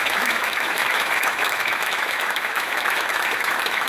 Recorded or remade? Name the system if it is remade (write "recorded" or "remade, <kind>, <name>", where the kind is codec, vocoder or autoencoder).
remade, autoencoder, DAC-VAE